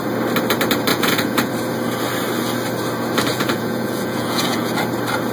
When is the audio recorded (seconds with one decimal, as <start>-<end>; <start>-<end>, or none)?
0.0-0.9; 1.5-3.3; 4.8-5.3